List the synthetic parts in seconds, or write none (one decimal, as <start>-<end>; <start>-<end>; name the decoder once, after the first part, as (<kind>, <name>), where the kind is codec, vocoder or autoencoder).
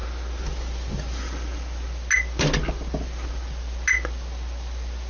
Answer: none